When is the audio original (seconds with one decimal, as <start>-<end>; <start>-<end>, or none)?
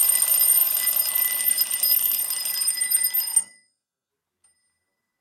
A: 0.0-3.4; 4.1-5.2